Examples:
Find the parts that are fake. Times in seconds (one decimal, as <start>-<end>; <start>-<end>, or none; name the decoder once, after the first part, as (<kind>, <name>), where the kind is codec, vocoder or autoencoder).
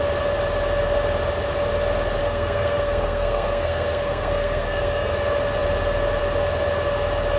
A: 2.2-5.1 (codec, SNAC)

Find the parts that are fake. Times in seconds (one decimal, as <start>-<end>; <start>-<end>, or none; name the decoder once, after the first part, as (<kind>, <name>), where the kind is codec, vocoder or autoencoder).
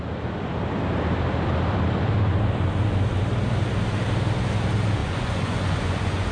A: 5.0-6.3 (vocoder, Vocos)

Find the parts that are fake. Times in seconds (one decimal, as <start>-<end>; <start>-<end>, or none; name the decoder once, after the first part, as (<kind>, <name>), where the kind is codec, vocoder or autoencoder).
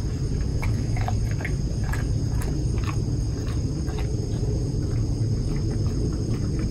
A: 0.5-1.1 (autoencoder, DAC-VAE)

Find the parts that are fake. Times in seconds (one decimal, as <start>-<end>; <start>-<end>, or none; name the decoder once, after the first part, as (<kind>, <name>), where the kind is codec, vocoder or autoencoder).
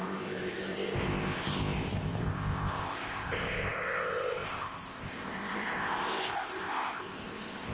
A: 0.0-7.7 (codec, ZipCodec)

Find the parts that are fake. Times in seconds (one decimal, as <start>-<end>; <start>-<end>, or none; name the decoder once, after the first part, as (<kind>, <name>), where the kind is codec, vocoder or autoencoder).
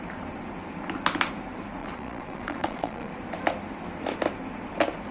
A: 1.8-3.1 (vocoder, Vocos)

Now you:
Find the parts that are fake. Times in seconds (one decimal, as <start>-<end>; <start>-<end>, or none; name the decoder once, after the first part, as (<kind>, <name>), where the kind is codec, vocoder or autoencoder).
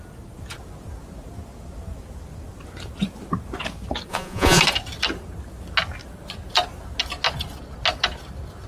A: 4.1-4.6 (vocoder, Vocos)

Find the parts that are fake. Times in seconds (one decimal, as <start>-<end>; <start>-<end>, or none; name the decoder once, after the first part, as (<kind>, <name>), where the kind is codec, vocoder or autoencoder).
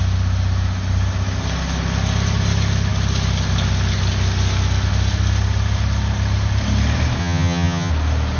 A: 7.2-7.9 (vocoder, HiFi-GAN)